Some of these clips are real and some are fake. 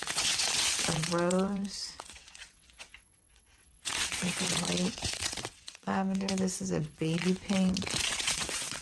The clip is fake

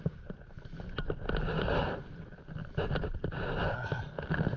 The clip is real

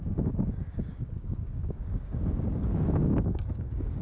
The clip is fake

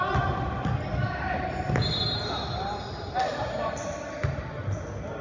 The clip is real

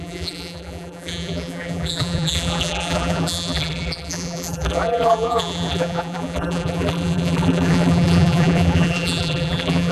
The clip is fake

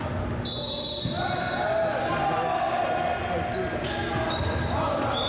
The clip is real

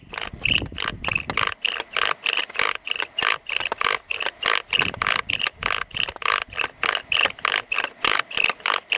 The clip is real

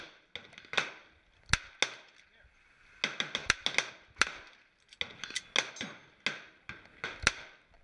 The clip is real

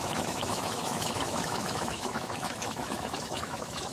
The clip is fake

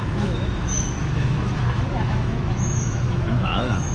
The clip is fake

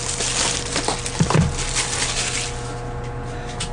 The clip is real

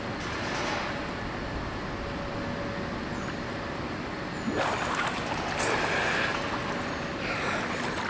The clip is real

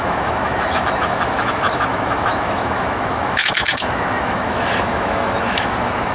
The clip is fake